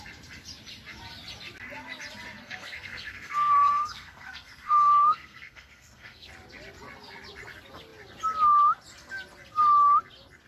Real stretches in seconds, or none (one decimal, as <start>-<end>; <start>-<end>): 0.0-2.4; 6.3-10.5